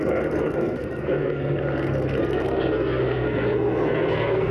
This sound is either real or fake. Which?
fake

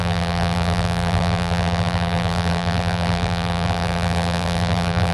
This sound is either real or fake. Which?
fake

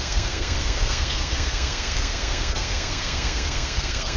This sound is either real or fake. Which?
fake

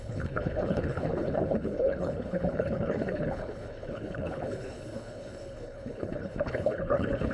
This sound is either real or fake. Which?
fake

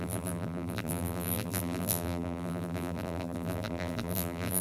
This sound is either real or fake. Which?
fake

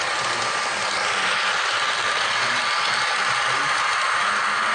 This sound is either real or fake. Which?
real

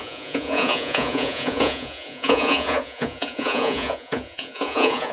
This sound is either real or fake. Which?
fake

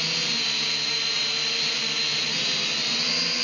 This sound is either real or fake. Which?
real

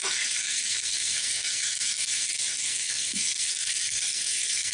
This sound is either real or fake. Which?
fake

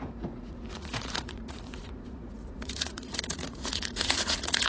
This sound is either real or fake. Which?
fake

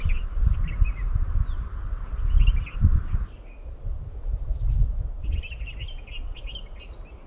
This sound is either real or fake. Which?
real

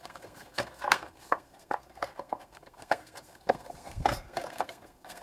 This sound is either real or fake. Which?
fake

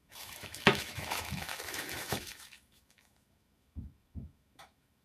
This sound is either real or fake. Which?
fake